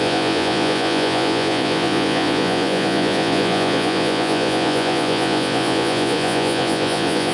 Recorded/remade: remade